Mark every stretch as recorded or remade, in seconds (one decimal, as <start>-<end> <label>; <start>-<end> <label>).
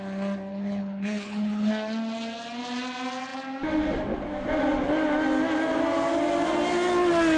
0.0-0.5 recorded; 0.5-1.7 remade; 1.7-7.4 recorded